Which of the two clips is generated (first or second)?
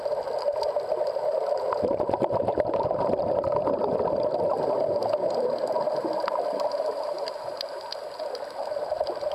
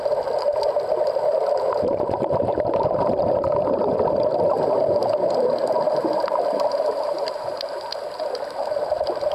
second